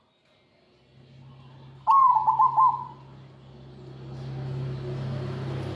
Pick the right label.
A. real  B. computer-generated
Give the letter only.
A